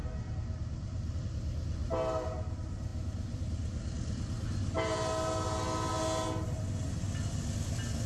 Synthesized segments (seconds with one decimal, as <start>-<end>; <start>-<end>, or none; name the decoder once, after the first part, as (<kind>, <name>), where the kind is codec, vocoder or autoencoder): none